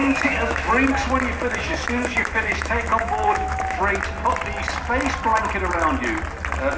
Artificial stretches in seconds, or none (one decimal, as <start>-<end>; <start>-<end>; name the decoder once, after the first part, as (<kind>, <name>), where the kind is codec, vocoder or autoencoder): 0.0-0.7 (autoencoder, DAC-VAE); 1.5-3.8